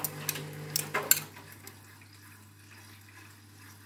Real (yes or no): yes